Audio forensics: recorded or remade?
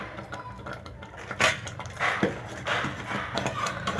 recorded